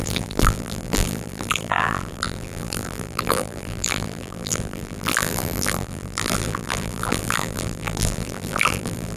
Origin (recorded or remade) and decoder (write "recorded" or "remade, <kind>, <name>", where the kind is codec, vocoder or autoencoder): remade, vocoder, BigVGAN v2